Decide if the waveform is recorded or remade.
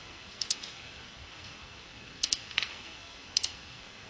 remade